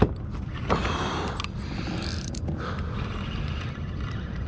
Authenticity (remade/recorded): recorded